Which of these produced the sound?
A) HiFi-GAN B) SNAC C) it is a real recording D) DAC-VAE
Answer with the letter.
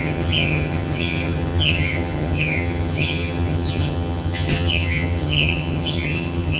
A